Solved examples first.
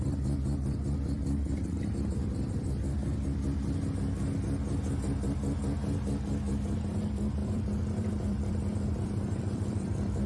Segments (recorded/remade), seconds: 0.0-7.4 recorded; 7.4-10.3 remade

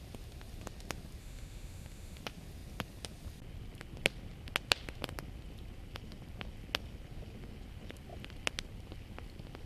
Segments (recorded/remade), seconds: 0.0-1.2 recorded; 1.2-2.2 remade; 2.2-9.7 recorded

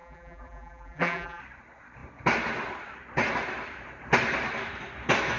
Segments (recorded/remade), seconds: 0.0-1.4 remade; 1.4-5.4 recorded